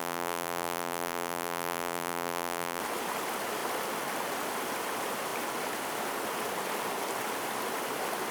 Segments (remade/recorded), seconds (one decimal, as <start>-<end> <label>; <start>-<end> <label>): 0.0-2.8 remade; 2.8-8.3 recorded

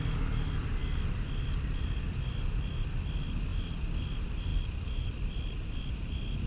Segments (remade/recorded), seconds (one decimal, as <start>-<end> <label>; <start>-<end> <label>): 0.0-4.5 recorded; 4.5-5.8 remade; 5.8-6.5 recorded

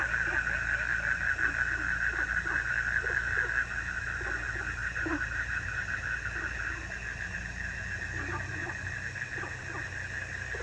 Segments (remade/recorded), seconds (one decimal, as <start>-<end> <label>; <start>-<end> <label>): 0.0-4.8 recorded; 4.8-5.9 remade; 5.9-10.6 recorded

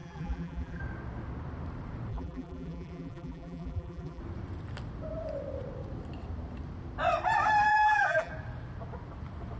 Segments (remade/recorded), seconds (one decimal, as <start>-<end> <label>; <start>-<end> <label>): 0.0-0.8 remade; 0.8-2.1 recorded; 2.1-4.2 remade; 4.2-7.7 recorded; 7.7-8.3 remade; 8.3-9.6 recorded